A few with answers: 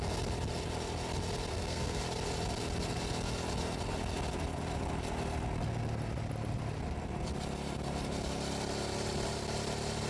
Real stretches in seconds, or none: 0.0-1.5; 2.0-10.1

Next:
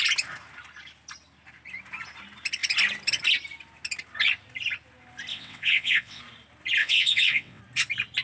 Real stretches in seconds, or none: 0.0-5.3; 6.2-6.8; 7.6-8.2

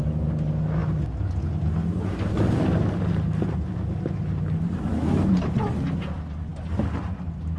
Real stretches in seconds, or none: 0.0-7.6

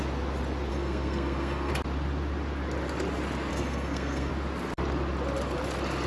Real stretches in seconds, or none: 0.0-0.7; 1.7-3.5; 4.3-6.1

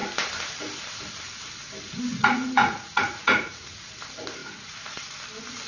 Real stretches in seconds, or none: 0.0-2.1; 3.9-4.4; 5.2-5.7